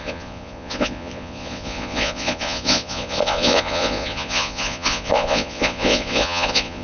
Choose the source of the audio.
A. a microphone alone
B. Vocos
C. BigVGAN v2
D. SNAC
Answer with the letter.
B